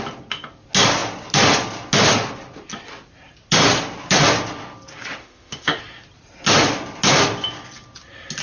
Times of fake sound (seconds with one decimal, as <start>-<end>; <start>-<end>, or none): 5.2-5.8